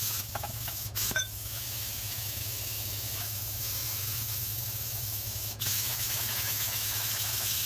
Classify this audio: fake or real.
fake